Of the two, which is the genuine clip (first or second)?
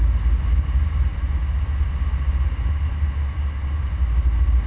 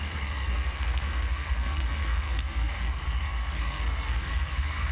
first